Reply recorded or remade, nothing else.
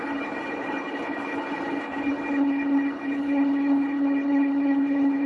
remade